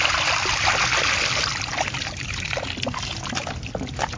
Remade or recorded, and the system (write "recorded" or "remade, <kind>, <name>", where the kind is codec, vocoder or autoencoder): recorded